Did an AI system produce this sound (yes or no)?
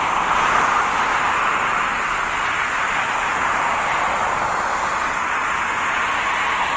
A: no